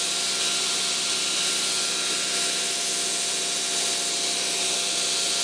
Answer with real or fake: real